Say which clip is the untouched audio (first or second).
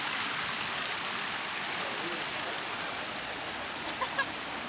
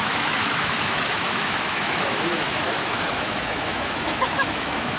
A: first